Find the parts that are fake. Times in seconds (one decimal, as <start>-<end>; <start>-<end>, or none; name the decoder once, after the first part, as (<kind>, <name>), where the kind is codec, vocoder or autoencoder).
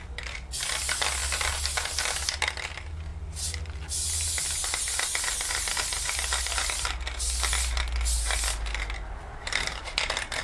none